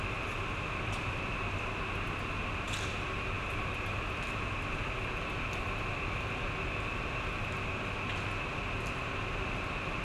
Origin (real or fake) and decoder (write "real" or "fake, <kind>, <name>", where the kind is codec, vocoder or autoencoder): real